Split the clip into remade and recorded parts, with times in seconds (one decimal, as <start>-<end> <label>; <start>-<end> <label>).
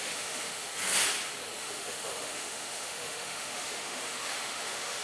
0.0-0.7 remade; 0.7-1.6 recorded; 1.6-5.0 remade